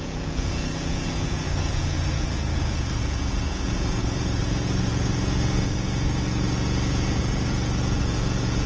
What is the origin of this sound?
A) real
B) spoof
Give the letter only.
B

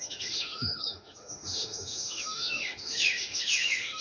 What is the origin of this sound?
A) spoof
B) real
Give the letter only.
A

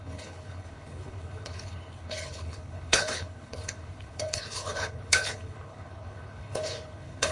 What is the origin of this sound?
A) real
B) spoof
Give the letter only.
B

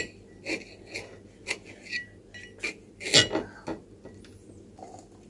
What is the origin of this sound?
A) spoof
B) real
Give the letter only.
B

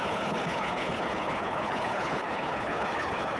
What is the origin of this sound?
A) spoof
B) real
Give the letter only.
A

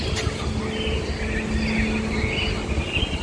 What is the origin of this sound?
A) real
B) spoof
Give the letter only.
A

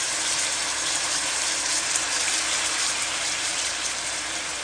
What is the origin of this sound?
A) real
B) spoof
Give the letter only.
B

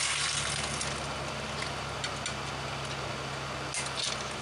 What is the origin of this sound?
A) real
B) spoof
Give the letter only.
A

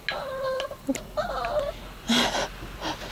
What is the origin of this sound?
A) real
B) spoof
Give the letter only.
A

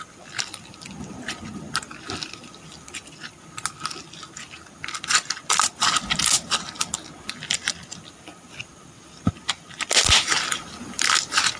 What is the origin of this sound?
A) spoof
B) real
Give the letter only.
B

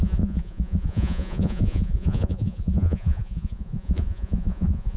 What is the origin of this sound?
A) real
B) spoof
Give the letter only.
B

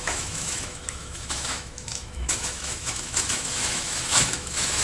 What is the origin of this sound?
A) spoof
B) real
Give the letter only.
A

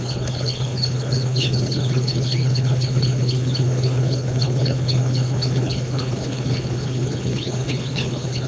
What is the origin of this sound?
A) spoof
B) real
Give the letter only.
A